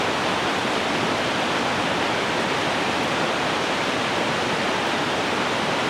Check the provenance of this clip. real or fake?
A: real